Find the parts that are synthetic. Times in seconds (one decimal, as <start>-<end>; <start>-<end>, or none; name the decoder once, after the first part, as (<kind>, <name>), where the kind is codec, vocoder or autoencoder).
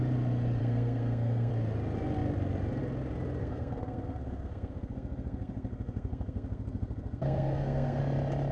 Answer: 0.6-1.5 (codec, SNAC); 3.4-8.0